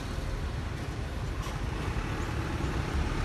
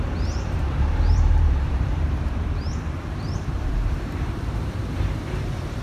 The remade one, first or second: second